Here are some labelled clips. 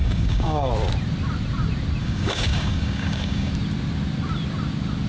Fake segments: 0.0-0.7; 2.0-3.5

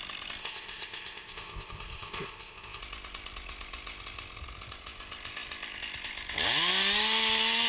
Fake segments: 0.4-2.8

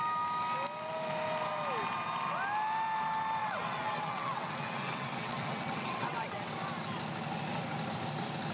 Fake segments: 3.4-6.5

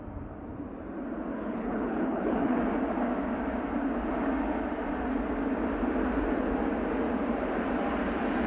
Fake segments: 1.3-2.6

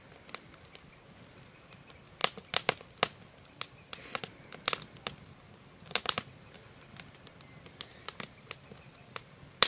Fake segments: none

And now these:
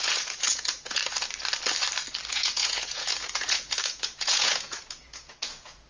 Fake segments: 0.0-1.0; 2.3-5.9